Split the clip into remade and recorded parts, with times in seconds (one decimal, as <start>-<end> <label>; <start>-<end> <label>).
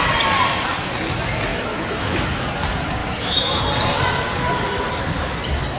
0.0-1.5 recorded; 1.5-2.4 remade; 2.4-3.0 recorded; 3.0-3.6 remade; 3.6-5.8 recorded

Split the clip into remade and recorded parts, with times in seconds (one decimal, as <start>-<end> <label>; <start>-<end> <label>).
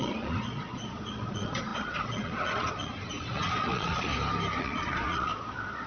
0.0-4.1 remade; 4.1-4.6 recorded; 4.6-5.9 remade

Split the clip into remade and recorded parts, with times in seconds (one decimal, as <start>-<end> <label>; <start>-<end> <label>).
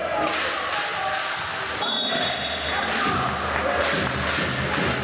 0.0-5.0 recorded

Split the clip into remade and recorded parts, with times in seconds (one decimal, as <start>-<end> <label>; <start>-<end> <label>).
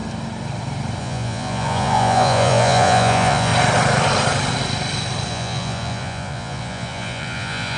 0.0-1.0 recorded; 1.0-3.5 remade; 3.5-5.3 recorded; 5.3-7.8 remade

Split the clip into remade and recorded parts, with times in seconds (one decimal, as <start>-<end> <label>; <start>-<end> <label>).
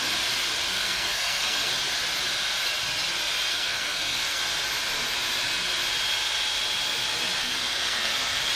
0.0-0.7 recorded; 0.7-1.7 remade; 1.7-3.5 recorded; 3.5-4.4 remade; 4.4-7.4 recorded; 7.4-8.5 remade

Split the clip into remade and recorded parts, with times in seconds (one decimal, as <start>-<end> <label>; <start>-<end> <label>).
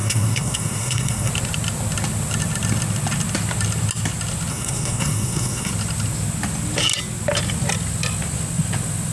0.0-1.3 remade; 1.3-4.5 recorded; 4.5-5.7 remade; 5.7-9.1 recorded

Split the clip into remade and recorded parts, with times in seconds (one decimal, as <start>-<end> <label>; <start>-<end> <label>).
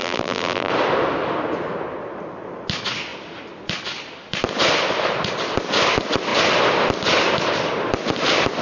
0.0-0.7 remade; 0.7-8.6 recorded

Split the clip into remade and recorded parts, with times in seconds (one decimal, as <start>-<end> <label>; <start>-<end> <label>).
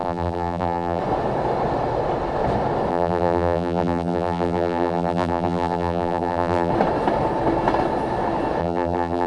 0.0-1.0 remade; 1.0-2.9 recorded; 2.9-6.7 remade; 6.7-8.6 recorded; 8.6-9.3 remade